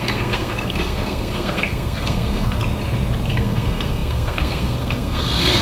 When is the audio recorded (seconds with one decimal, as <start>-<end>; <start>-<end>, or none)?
2.6-3.3